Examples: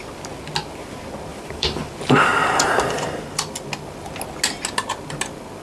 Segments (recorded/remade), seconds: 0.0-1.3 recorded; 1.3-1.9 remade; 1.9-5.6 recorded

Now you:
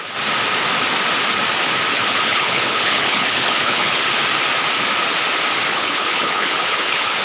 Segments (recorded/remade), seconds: 0.0-1.9 recorded; 1.9-4.0 remade; 4.0-5.7 recorded; 5.7-7.2 remade

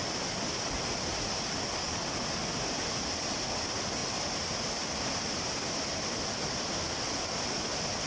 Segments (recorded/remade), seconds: 0.0-8.1 recorded

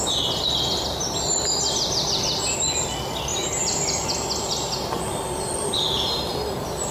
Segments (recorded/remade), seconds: 0.0-6.9 recorded

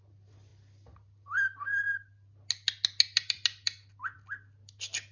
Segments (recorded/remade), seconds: 0.0-5.1 recorded

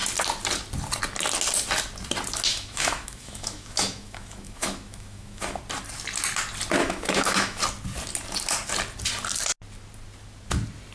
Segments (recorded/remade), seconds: 0.0-2.5 recorded; 2.5-5.6 remade; 5.6-6.8 recorded; 6.8-7.6 remade; 7.6-10.9 recorded

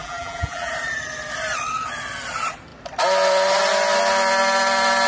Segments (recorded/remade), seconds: 0.0-0.7 remade; 0.7-5.1 recorded

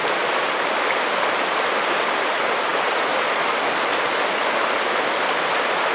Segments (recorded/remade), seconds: 0.0-5.9 recorded